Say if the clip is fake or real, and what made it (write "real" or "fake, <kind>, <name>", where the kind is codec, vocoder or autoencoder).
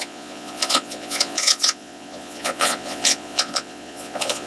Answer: fake, vocoder, Vocos